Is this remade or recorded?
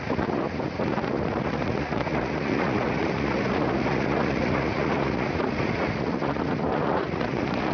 remade